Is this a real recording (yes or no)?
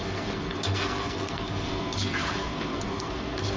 no